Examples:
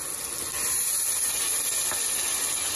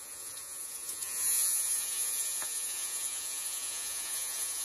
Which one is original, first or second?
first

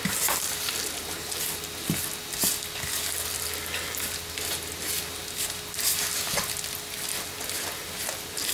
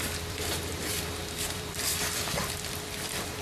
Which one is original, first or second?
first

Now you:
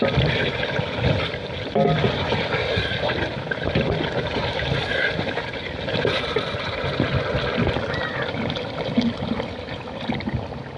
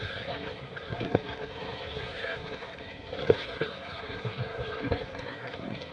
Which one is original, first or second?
first